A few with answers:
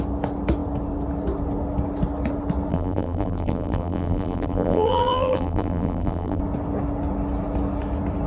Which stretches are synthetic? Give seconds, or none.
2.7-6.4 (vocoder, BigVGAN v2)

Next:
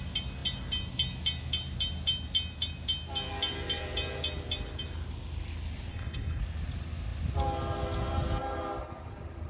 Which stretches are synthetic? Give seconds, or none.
5.9-6.4 (codec, HILCodec)

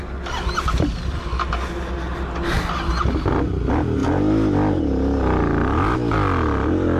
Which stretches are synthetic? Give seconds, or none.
none